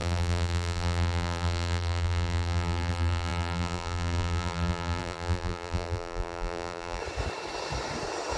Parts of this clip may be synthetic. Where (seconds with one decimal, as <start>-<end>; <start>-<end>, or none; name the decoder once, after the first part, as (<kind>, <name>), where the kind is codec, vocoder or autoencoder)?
0.0-7.0 (vocoder, BigVGAN v2)